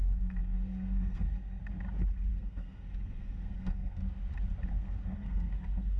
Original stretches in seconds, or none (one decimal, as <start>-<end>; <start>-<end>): 1.6-2.3; 4.0-4.7